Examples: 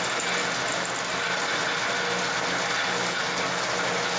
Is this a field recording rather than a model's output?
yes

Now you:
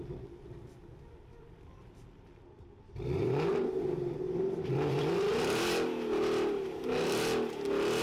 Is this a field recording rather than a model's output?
yes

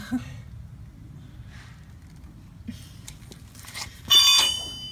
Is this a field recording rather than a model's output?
yes